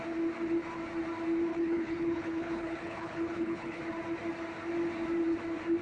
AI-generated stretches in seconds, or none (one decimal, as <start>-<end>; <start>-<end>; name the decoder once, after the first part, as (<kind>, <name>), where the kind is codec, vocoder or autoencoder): 1.5-3.8 (codec, HILCodec)

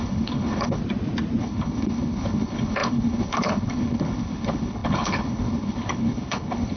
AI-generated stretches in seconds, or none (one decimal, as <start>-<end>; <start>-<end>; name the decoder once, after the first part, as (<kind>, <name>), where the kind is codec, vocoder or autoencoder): 0.0-0.8 (codec, HILCodec); 1.4-6.8

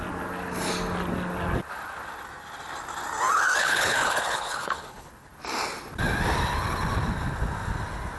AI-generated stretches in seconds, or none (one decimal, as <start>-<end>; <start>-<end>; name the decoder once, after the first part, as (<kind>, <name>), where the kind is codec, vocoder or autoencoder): 3.6-5.1 (codec, HILCodec)

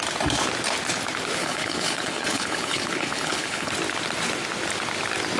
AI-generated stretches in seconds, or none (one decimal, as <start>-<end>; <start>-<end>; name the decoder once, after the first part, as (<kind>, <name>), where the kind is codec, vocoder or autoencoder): 1.4-3.7 (codec, HILCodec)

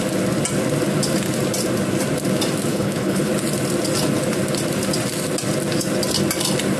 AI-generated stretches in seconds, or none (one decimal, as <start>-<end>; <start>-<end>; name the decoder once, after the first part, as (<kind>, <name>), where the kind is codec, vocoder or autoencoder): 2.7-3.3 (codec, HILCodec)

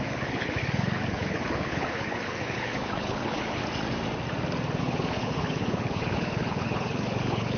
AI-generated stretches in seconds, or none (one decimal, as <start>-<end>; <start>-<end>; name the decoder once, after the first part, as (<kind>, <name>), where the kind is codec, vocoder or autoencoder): 0.0-3.6 (codec, HILCodec); 4.8-7.6

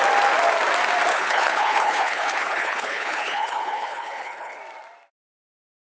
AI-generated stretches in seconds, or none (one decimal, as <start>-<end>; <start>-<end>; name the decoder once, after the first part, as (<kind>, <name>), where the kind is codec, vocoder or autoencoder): 1.1-4.6 (codec, HILCodec)